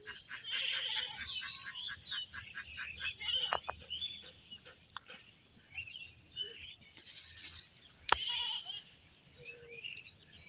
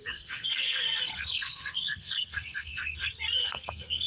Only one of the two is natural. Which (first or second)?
first